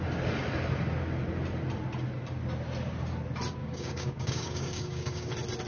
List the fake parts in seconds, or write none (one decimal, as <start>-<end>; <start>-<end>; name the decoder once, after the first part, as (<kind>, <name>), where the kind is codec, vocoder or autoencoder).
3.6-5.3 (codec, DAC)